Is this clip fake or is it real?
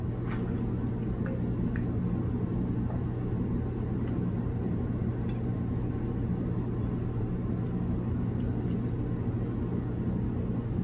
real